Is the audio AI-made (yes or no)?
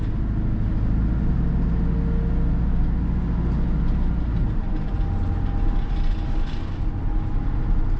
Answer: no